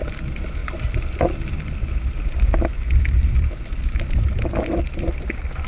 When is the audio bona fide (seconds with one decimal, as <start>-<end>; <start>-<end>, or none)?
0.0-5.7